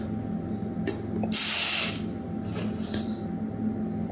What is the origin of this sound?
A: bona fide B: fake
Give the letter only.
A